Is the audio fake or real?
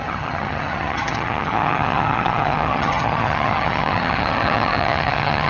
fake